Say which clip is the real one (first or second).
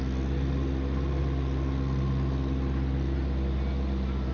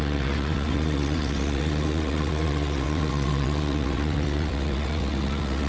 first